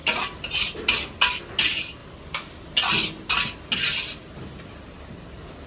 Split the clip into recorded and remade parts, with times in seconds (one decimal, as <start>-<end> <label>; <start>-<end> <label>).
0.0-5.7 recorded